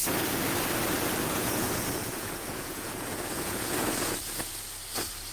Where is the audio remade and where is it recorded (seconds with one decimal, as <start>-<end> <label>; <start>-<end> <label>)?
0.0-1.3 recorded; 1.3-4.5 remade; 4.5-5.3 recorded